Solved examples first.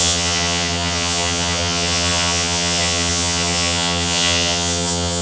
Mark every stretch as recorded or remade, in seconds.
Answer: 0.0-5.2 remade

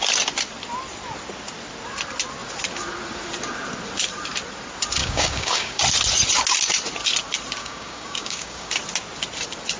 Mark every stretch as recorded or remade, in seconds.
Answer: 0.0-5.0 recorded; 5.0-5.8 remade; 5.8-7.6 recorded; 7.6-8.7 remade; 8.7-9.8 recorded